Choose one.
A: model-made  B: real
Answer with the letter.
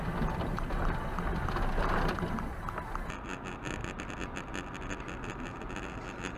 B